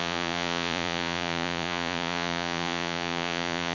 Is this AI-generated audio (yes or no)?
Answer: yes